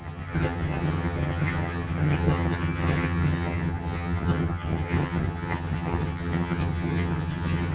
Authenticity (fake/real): fake